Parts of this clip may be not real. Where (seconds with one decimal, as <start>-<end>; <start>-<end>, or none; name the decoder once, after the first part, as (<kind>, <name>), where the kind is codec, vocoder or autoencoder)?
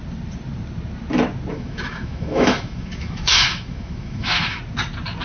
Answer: 1.5-4.6 (autoencoder, DAC-VAE)